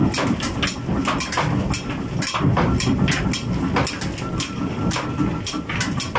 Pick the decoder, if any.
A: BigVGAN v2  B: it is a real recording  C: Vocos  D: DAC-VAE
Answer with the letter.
B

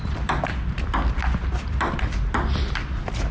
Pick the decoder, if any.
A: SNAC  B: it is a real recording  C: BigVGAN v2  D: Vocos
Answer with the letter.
C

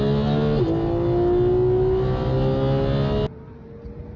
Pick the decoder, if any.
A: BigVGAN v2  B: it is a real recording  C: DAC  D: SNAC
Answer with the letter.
B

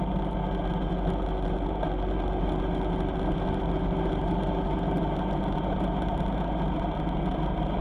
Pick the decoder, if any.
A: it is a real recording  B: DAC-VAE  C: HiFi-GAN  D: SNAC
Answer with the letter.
A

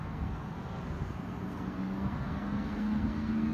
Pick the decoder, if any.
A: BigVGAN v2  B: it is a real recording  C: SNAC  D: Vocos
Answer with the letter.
C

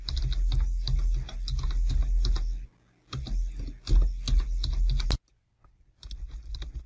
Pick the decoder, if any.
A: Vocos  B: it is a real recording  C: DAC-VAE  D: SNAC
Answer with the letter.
B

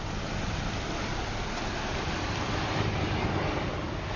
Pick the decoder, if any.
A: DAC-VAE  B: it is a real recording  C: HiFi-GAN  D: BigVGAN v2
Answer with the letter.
B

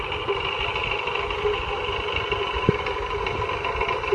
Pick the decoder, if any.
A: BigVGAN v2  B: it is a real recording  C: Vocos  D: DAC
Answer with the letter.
B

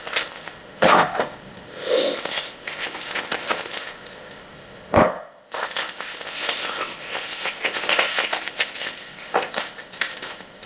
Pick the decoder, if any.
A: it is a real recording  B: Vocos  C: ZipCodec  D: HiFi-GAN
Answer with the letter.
C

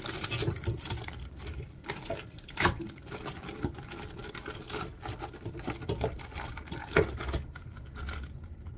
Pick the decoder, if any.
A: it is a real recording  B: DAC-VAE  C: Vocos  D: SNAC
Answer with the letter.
A